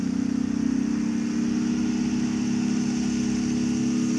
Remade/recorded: recorded